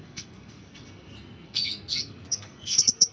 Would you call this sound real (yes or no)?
no